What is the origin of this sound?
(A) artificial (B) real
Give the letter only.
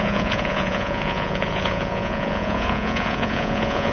A